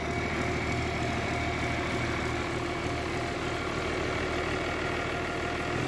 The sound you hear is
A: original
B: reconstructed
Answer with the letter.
A